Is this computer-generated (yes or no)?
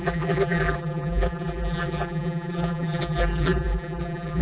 yes